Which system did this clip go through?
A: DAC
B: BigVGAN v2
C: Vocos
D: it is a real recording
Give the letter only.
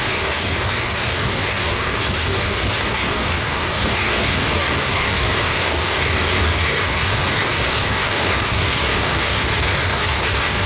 A